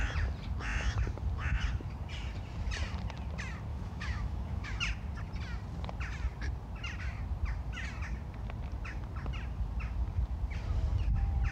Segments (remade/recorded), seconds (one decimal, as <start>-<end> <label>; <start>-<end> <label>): 0.0-3.7 recorded; 3.7-4.8 remade; 4.8-11.5 recorded